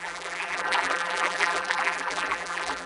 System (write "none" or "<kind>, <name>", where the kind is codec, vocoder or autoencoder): vocoder, BigVGAN v2